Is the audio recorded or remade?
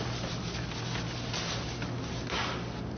recorded